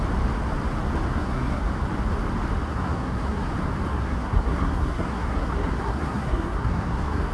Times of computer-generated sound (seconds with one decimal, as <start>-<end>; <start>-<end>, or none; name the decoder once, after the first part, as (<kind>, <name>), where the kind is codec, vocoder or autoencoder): 1.1-1.6 (codec, SNAC); 2.7-3.5; 3.9-7.3